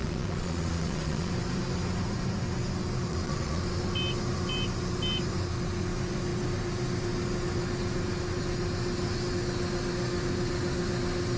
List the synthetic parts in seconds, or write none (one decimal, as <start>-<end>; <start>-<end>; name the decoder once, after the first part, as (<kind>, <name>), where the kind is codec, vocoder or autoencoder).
0.0-1.3 (vocoder, Vocos); 3.1-3.6